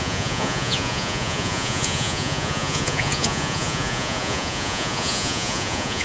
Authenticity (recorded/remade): remade